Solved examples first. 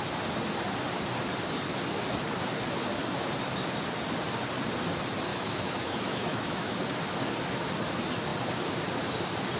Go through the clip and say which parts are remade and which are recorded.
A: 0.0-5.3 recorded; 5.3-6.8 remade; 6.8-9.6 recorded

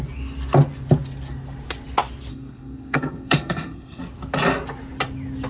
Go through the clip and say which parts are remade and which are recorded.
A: 0.0-2.3 recorded; 2.3-4.0 remade; 4.0-5.5 recorded

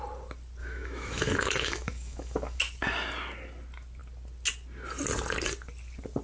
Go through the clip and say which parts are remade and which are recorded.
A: 0.0-0.6 recorded; 0.6-2.6 remade; 2.6-6.2 recorded

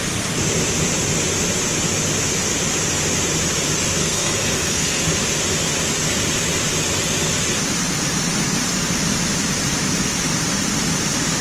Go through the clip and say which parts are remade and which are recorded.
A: 0.0-4.0 recorded; 4.0-5.0 remade; 5.0-11.4 recorded

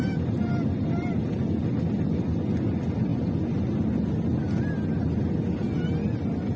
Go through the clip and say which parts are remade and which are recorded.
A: 0.0-6.6 recorded

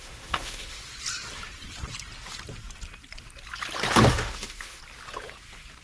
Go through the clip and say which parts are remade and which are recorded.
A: 0.0-0.8 remade; 0.8-4.1 recorded; 4.1-4.8 remade; 4.8-5.8 recorded

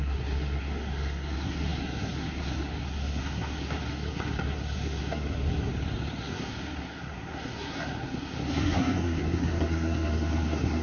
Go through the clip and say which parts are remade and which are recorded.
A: 0.0-5.7 remade; 5.7-6.2 recorded; 6.2-10.8 remade